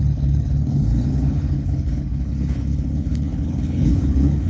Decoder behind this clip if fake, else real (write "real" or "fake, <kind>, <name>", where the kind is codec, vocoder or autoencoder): fake, codec, HILCodec